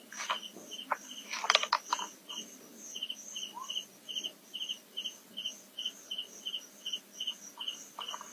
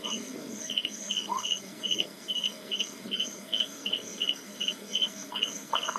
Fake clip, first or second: second